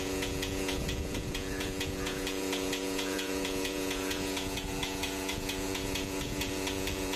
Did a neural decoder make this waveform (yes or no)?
yes